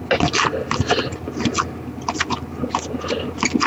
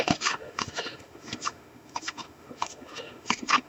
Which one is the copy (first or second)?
second